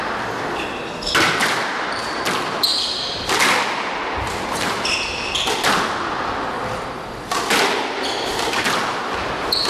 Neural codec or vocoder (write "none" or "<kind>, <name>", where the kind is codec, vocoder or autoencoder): none